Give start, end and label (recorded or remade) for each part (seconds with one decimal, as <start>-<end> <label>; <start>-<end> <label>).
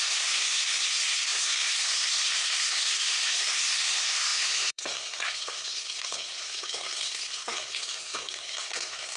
0.0-9.2 remade